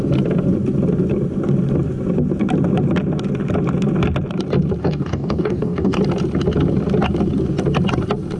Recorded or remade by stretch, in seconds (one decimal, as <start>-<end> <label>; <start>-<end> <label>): 0.0-4.8 recorded; 4.8-6.0 remade; 6.0-8.4 recorded